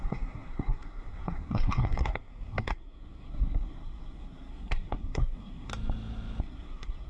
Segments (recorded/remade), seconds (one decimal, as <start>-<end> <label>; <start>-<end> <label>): 0.0-5.7 remade; 5.7-6.4 recorded; 6.4-7.1 remade